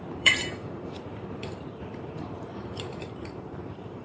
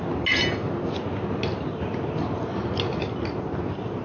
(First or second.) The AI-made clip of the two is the first